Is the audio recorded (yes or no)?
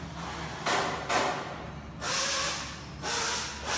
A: yes